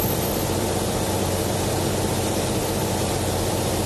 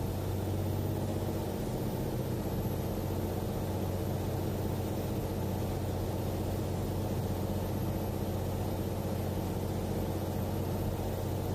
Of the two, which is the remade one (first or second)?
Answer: first